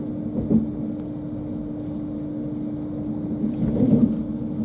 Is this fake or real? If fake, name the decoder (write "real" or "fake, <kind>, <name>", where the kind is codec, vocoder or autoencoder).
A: real